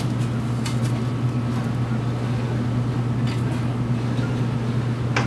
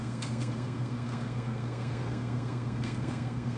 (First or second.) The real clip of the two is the first